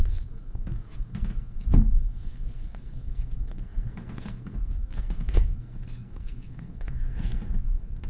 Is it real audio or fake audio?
fake